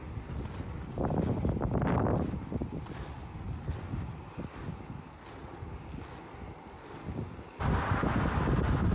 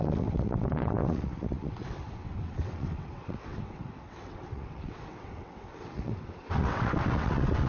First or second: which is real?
first